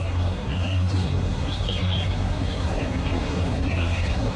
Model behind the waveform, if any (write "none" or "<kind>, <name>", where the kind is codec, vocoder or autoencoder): codec, SNAC